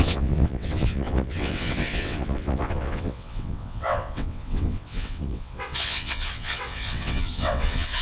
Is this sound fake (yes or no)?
yes